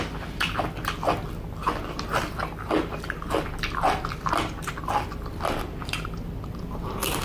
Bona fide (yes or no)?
yes